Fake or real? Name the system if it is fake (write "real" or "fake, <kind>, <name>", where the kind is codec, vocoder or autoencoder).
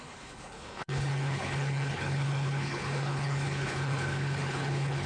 fake, codec, HILCodec